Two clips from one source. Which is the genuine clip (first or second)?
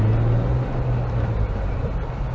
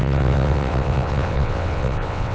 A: first